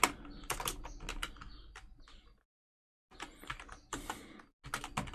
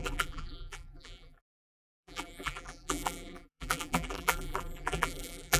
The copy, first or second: second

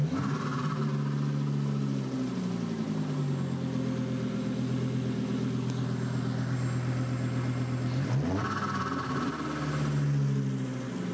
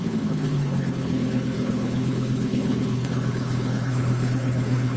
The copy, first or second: second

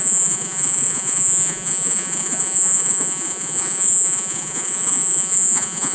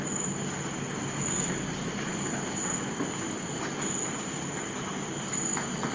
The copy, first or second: first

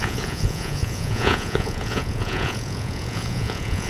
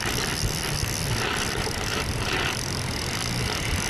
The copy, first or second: first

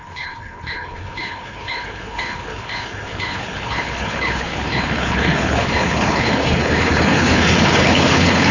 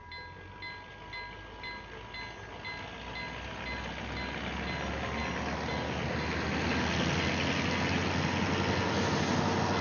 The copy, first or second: first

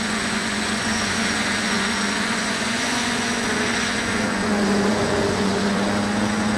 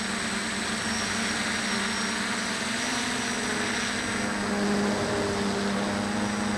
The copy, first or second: first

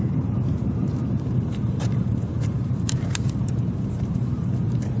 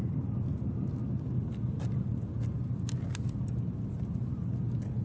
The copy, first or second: first